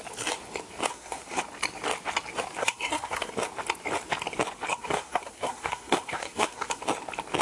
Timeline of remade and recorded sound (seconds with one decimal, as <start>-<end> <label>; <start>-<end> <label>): 0.0-0.9 recorded; 0.9-1.4 remade; 1.4-2.6 recorded; 2.6-3.3 remade; 3.3-4.7 recorded; 4.7-6.8 remade; 6.8-7.4 recorded